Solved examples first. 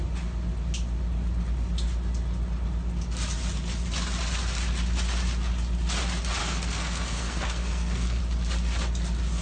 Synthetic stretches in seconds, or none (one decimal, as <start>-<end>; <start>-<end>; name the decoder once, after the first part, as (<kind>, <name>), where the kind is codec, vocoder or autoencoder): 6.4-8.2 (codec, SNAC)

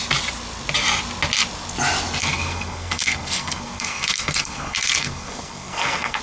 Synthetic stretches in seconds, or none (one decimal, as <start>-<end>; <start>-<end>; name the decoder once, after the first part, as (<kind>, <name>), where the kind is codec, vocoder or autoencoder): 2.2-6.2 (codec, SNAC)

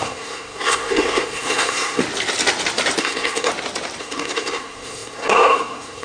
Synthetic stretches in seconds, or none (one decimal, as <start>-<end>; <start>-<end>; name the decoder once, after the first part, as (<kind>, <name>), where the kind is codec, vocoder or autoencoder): 0.0-2.0 (codec, SNAC); 3.0-3.5; 4.0-6.0